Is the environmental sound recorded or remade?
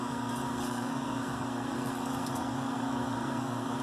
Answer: remade